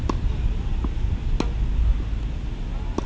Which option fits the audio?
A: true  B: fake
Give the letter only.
A